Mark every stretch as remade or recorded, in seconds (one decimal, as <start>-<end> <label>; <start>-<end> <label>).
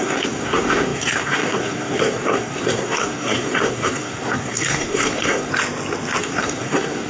0.0-5.5 remade; 5.5-6.2 recorded; 6.2-7.1 remade